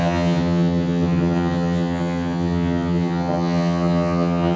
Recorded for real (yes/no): no